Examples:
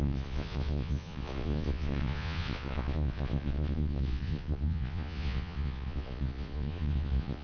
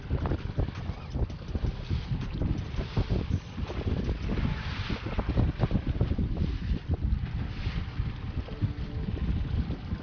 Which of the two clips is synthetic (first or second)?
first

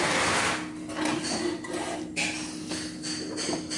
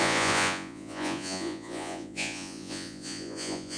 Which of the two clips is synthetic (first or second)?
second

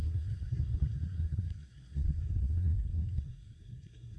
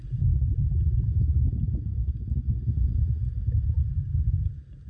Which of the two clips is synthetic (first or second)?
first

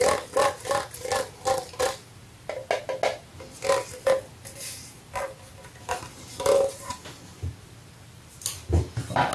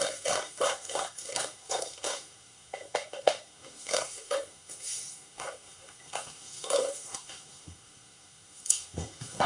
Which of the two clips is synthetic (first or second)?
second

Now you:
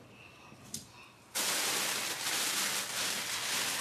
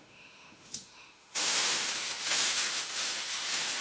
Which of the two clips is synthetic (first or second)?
second